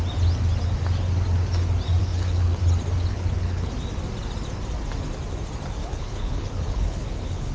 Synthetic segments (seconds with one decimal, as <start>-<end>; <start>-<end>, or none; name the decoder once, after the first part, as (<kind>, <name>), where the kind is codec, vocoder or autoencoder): 2.0-2.6 (codec, HILCodec); 3.1-3.7; 5.8-7.5